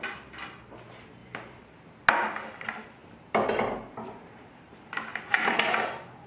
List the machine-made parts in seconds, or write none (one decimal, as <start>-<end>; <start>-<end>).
1.2-1.8; 3.0-5.6